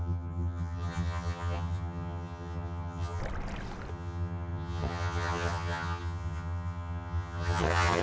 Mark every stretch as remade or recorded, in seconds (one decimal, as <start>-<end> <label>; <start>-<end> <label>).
0.0-3.2 remade; 3.2-3.9 recorded; 3.9-8.0 remade